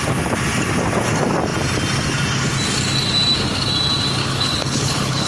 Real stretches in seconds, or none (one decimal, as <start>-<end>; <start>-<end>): 0.0-4.2